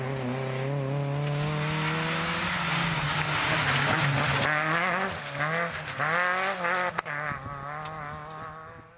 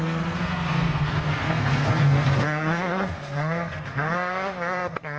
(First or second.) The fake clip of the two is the second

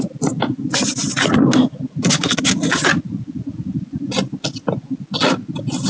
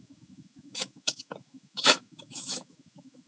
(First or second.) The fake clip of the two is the second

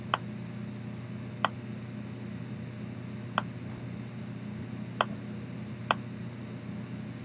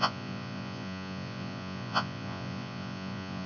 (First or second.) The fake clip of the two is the second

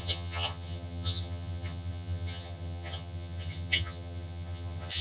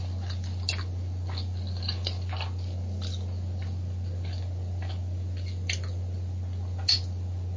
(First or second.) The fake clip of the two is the first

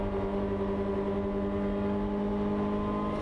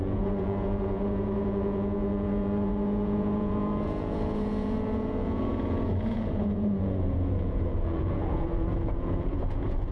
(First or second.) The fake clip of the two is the second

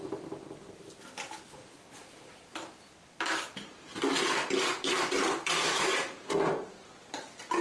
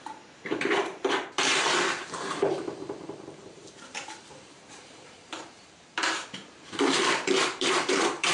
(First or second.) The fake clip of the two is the second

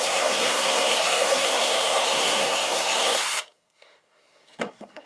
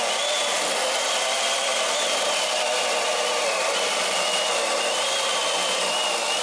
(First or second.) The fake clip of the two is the first